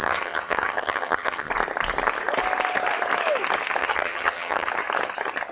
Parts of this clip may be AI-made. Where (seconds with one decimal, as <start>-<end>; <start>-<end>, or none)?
0.0-1.5; 3.8-4.7